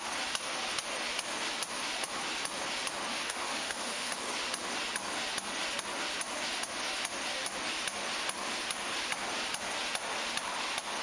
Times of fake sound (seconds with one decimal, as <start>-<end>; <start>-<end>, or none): 3.1-4.1